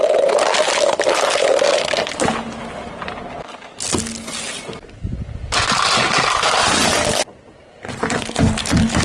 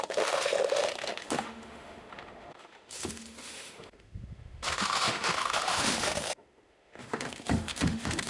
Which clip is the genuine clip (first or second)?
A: first